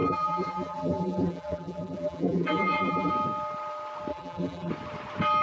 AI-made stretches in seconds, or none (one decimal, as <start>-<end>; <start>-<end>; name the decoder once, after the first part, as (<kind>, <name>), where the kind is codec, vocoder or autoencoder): 0.0-3.1 (vocoder, BigVGAN v2); 4.1-4.7